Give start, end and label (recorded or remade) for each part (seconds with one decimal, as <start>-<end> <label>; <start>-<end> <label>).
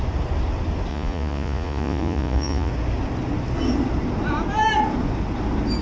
0.0-0.9 recorded; 0.9-2.7 remade; 2.7-5.8 recorded